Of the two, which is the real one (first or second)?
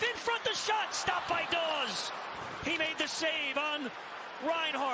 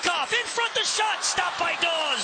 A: first